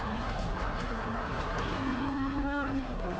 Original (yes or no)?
no